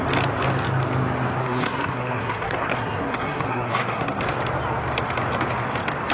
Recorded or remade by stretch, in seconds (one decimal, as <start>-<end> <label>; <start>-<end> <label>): 0.0-1.4 recorded; 1.4-4.2 remade; 4.2-6.1 recorded